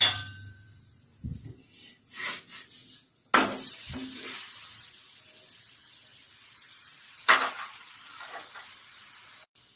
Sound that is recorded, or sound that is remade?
recorded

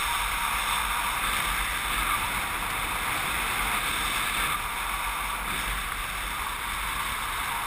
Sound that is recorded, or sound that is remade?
recorded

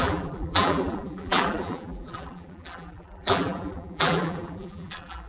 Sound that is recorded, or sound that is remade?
remade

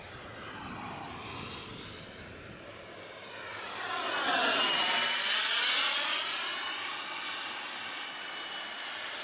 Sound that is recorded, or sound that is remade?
recorded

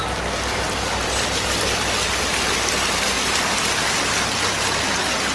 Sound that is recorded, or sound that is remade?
recorded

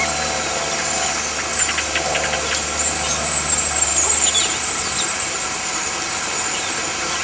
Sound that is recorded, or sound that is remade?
recorded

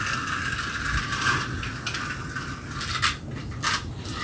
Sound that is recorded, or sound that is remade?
recorded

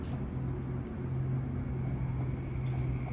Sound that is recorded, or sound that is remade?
recorded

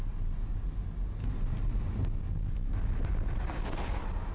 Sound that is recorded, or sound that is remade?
recorded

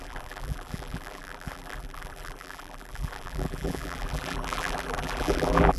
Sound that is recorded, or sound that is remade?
remade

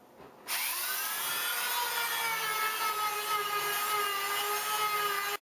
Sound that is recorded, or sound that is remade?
recorded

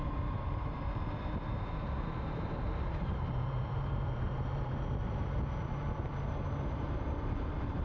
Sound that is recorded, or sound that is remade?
remade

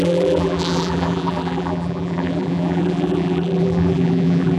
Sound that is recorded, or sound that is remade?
remade